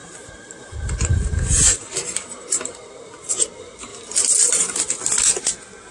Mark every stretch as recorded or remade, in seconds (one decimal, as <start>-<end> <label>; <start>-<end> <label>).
0.0-3.3 remade; 3.3-3.9 recorded; 3.9-4.8 remade; 4.8-5.9 recorded